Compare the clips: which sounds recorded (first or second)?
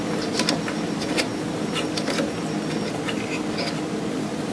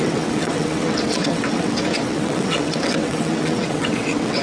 first